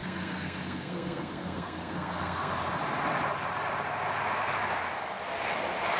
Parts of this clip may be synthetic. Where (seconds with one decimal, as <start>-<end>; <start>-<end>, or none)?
0.0-2.5